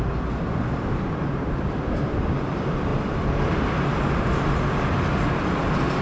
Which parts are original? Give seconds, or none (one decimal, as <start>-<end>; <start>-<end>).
0.0-6.0

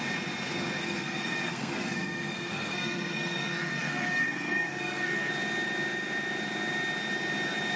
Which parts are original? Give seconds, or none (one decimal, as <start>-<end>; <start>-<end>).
0.0-0.8; 5.3-7.8

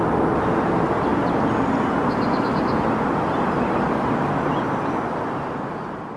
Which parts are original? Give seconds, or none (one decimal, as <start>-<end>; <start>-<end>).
0.0-6.2

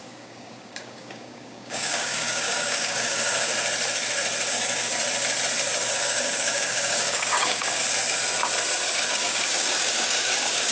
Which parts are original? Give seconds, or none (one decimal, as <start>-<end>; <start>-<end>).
3.5-4.5; 4.9-5.9; 7.8-9.1

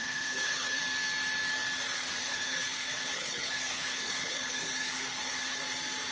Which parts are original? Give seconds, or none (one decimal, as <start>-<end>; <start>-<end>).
0.8-2.2; 5.6-6.1

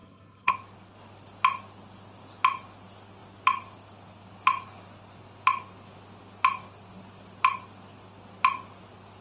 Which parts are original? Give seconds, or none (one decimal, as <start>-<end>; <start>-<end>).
0.5-9.2

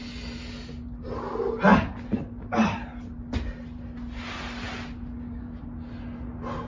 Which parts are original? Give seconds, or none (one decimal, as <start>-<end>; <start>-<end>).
0.0-6.7